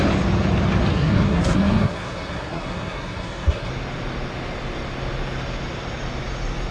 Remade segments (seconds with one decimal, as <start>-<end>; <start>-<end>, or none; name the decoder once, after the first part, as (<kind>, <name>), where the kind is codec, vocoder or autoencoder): 0.9-3.7 (codec, SNAC)